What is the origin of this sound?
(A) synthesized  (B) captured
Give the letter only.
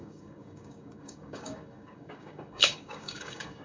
A